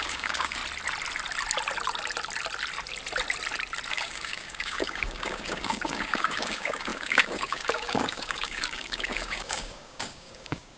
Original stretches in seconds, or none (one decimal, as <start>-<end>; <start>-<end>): 0.6-3.9